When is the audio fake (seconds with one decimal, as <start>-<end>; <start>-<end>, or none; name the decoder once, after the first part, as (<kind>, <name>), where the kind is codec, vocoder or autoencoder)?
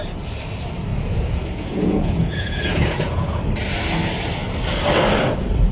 0.9-3.4 (vocoder, Vocos)